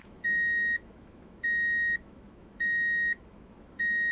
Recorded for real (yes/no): no